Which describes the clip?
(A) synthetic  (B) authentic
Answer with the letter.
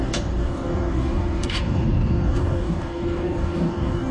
A